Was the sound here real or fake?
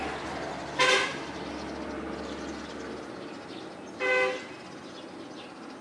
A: real